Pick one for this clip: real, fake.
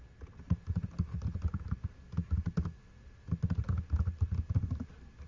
real